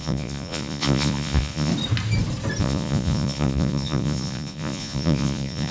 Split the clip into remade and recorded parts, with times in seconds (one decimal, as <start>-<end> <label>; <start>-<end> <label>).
0.0-1.7 remade; 1.7-2.6 recorded; 2.6-5.7 remade